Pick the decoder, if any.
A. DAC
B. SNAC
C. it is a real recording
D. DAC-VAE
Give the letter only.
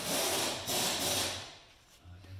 C